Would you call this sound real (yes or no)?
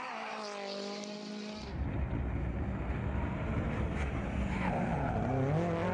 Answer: yes